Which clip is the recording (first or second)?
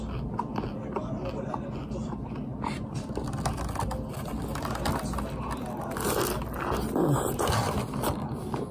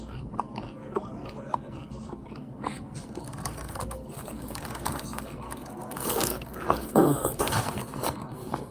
first